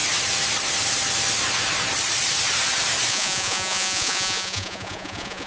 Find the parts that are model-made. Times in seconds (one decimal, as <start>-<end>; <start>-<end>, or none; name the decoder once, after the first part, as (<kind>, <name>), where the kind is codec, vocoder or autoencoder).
3.1-5.5 (vocoder, Vocos)